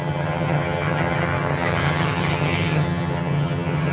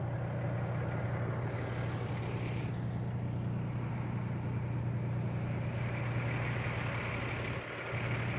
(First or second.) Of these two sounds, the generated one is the first